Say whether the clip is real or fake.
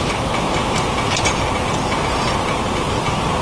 real